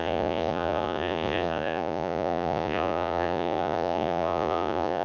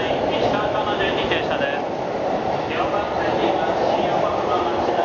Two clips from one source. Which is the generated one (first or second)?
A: first